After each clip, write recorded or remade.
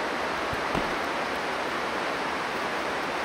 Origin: remade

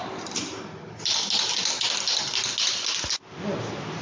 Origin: recorded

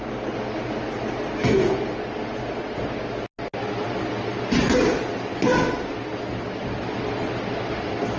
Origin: recorded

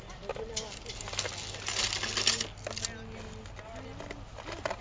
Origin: recorded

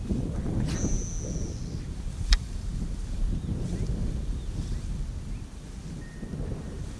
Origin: recorded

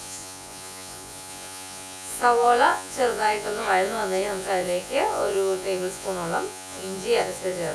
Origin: remade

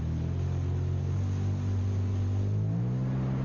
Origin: recorded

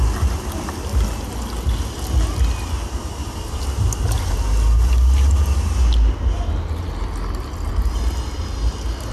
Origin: recorded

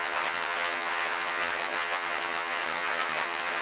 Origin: remade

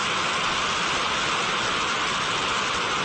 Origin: recorded